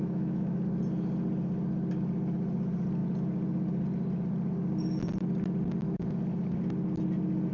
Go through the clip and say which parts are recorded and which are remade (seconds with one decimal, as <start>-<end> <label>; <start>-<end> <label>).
0.0-0.6 remade; 0.6-7.5 recorded